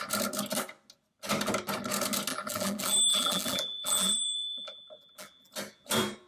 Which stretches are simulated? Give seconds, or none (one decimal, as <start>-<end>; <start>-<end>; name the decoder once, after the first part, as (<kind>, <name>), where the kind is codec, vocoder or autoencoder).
2.3-5.5 (vocoder, BigVGAN v2)